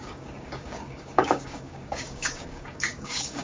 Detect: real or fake fake